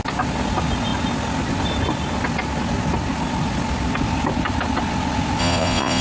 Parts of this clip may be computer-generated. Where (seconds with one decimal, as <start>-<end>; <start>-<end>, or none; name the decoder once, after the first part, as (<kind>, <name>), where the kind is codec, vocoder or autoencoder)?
5.4-6.0 (vocoder, Vocos)